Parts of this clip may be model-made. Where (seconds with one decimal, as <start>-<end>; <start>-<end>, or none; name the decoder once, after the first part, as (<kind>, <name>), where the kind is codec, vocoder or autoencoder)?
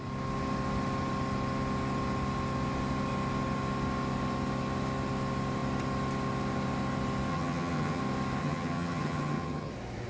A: 7.3-8.0 (vocoder, HiFi-GAN); 8.4-9.7